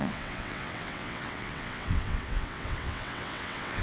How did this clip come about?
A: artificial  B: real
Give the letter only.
A